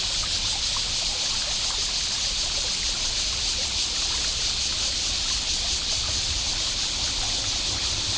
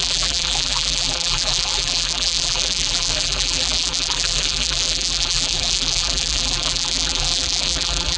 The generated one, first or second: second